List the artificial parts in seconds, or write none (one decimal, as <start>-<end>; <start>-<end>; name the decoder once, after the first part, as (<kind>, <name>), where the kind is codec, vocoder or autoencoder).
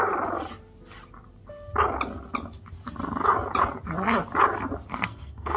4.9-5.6 (codec, SNAC)